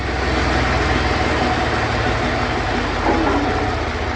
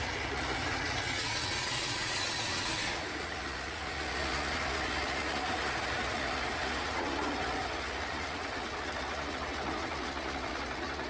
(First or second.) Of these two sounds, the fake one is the second